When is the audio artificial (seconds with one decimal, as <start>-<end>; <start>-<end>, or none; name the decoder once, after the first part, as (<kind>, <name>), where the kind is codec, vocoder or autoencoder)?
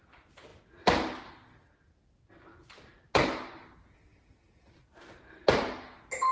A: none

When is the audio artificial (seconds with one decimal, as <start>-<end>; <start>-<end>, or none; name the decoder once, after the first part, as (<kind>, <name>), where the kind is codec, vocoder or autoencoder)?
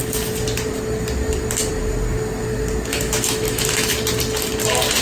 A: 2.9-3.9 (autoencoder, DAC-VAE)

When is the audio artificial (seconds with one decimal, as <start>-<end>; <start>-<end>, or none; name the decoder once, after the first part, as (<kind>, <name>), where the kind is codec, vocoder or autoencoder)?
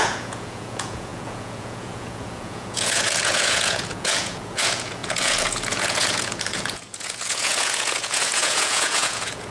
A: 0.0-9.5 (vocoder, Vocos)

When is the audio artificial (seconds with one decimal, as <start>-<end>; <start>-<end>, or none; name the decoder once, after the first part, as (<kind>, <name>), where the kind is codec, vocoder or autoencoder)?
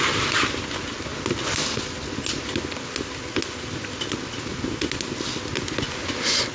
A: none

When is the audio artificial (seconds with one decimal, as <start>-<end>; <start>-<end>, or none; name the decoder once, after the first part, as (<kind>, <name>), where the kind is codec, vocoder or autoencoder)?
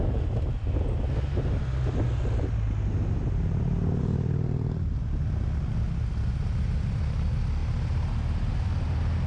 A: 4.0-5.0 (vocoder, BigVGAN v2)